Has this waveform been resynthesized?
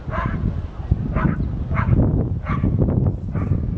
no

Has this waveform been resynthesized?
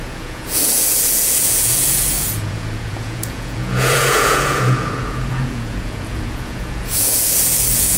yes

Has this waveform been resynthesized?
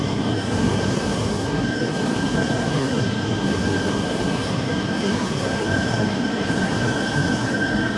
yes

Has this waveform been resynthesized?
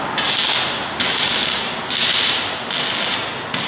no